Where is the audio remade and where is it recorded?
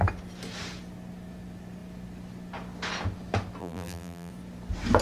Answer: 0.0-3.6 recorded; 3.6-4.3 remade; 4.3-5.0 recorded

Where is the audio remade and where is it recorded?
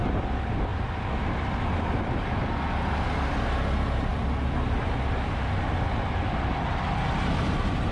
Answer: 0.0-0.7 recorded; 0.7-2.4 remade; 2.4-7.9 recorded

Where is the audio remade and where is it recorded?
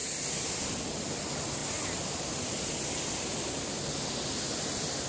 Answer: 0.0-5.1 recorded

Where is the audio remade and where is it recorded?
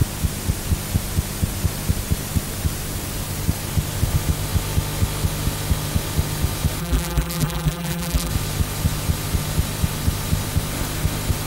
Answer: 0.0-6.8 recorded; 6.8-8.3 remade; 8.3-11.5 recorded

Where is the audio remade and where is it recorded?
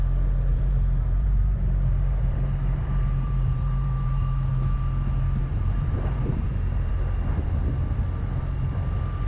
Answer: 0.0-0.5 recorded; 0.5-4.2 remade; 4.2-5.4 recorded; 5.4-6.9 remade; 6.9-9.3 recorded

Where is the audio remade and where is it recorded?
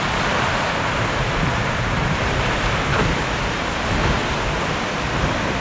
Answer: 0.0-4.2 remade; 4.2-5.6 recorded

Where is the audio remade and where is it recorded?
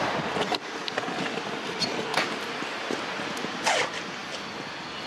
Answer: 0.0-5.1 recorded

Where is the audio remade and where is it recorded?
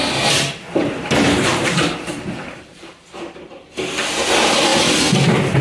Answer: 0.0-0.8 recorded; 0.8-3.1 remade; 3.1-5.6 recorded